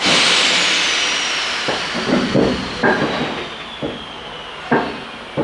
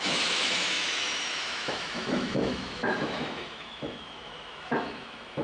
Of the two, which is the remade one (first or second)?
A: second